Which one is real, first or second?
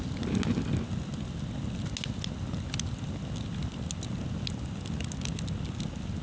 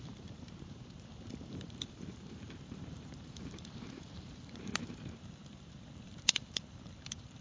first